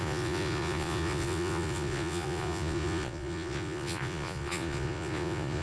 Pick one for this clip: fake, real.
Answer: fake